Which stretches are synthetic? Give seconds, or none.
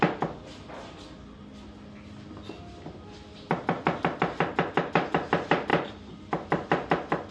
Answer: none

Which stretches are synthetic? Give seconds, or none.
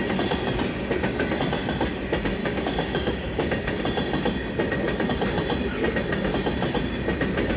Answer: 2.4-3.8 (codec, DAC)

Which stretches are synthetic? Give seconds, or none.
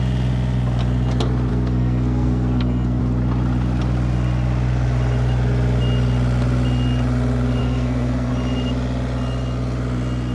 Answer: 1.5-3.0 (codec, SNAC); 7.6-8.3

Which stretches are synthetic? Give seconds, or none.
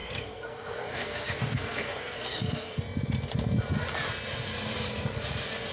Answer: 0.0-2.8 (codec, SNAC)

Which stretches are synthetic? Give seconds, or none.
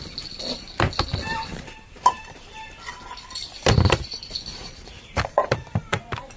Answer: 1.5-2.6 (vocoder, BigVGAN v2); 4.5-6.0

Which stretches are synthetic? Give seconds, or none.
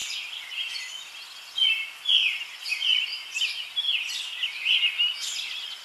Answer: none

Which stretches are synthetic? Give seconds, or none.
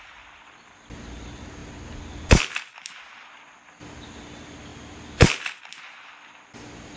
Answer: none